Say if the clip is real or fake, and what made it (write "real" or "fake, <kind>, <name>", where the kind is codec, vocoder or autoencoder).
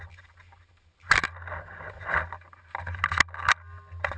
real